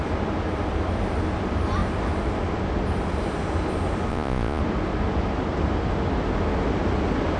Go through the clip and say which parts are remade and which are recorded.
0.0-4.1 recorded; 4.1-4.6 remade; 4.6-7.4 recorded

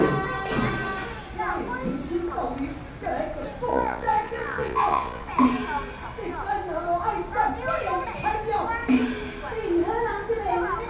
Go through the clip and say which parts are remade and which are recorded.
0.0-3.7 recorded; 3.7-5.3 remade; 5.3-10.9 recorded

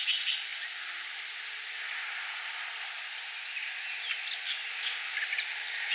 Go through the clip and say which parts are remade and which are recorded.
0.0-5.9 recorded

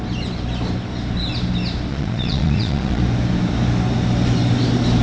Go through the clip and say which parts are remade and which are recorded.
0.0-1.9 recorded; 1.9-3.0 remade; 3.0-5.0 recorded

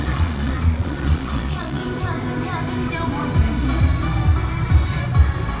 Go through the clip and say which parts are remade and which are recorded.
0.0-1.8 remade; 1.8-5.6 recorded

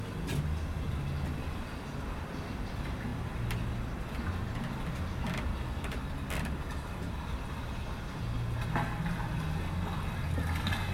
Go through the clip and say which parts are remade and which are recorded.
0.0-10.9 recorded

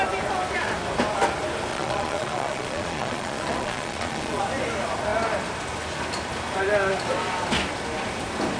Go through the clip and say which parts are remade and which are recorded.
0.0-1.7 recorded; 1.7-4.4 remade; 4.4-8.6 recorded

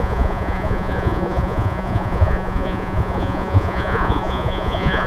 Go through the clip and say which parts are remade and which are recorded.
0.0-5.1 remade